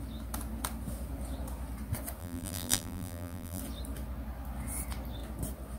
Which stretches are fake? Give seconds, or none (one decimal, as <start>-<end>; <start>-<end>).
2.2-3.6